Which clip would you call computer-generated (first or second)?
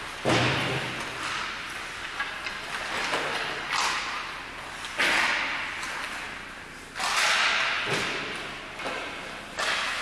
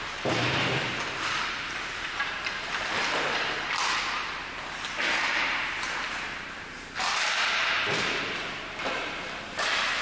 second